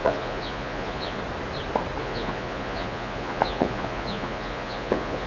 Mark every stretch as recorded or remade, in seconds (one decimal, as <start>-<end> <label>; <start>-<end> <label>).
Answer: 0.0-1.2 remade; 1.2-2.0 recorded; 2.0-5.3 remade